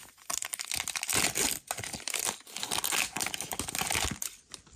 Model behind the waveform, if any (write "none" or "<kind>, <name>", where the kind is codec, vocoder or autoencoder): none